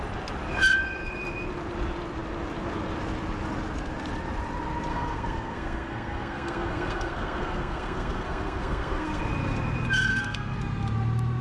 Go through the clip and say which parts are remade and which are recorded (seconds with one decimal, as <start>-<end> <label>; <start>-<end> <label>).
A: 0.0-4.9 recorded; 4.9-9.2 remade; 9.2-10.1 recorded; 10.1-10.6 remade; 10.6-11.4 recorded